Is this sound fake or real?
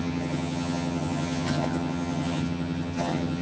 fake